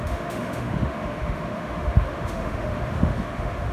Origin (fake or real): fake